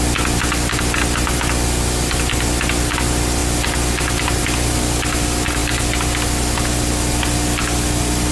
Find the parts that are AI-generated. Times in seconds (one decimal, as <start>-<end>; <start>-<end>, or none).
none